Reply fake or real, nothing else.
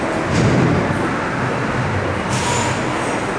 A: real